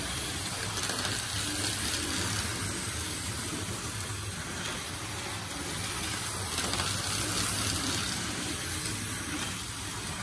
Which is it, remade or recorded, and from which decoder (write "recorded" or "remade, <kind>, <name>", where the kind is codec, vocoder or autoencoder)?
recorded